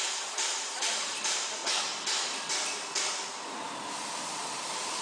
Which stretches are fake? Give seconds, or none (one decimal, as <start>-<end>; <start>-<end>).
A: 0.0-1.6; 4.1-5.0